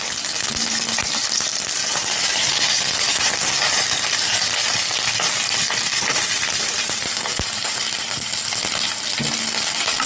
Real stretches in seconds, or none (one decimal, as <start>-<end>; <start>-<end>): 0.0-1.8; 4.4-5.9; 8.3-10.1